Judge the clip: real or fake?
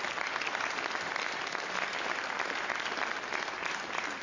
real